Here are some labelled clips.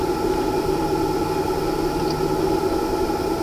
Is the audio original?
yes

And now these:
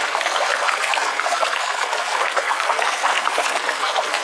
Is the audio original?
no